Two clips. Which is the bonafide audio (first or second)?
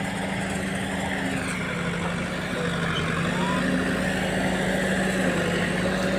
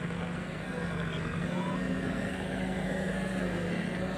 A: first